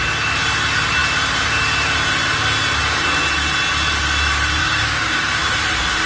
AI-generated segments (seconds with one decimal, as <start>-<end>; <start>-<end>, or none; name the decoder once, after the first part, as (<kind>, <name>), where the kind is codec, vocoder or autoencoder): 4.6-5.4 (codec, DAC)